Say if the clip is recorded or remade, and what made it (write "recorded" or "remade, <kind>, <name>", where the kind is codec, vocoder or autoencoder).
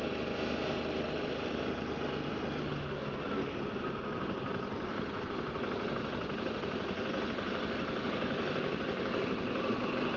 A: recorded